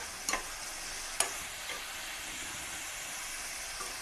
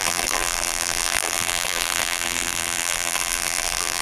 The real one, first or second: first